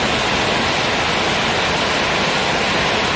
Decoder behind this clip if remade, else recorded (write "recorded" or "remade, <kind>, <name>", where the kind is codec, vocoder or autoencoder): recorded